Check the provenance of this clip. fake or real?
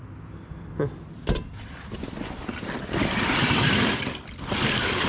fake